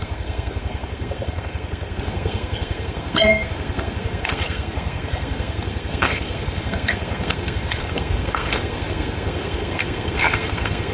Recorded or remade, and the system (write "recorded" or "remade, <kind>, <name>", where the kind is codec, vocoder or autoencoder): remade, codec, SNAC